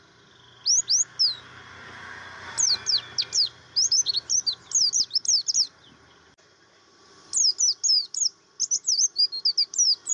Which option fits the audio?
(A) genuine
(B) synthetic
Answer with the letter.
A